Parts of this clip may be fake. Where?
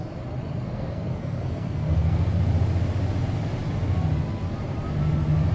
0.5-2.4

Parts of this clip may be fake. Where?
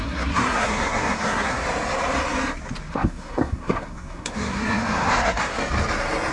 0.0-1.6; 2.9-5.6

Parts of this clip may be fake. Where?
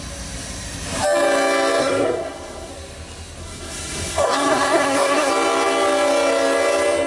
1.8-2.7; 3.4-5.3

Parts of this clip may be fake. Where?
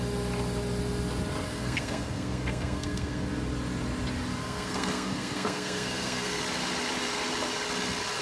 1.5-3.2; 4.4-6.4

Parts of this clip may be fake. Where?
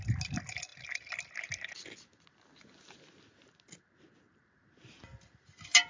none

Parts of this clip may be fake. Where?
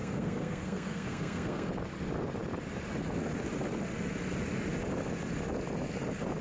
0.0-1.7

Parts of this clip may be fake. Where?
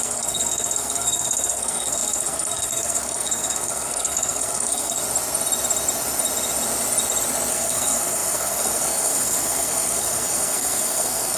0.0-5.0; 7.5-11.4